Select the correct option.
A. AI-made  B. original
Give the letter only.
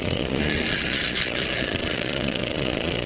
A